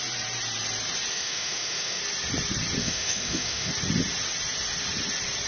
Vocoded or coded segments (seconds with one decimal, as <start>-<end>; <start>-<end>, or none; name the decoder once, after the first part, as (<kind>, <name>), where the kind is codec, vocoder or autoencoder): 1.1-2.0 (autoencoder, DAC-VAE); 2.8-3.7